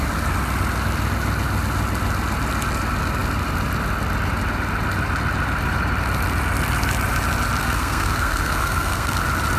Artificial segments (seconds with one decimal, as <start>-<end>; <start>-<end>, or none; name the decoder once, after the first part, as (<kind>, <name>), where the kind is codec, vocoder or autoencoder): 7.6-9.2 (codec, SNAC)